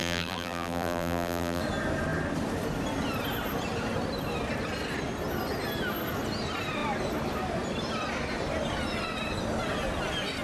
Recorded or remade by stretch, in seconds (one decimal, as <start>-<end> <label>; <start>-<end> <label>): 0.0-1.6 remade; 1.6-10.4 recorded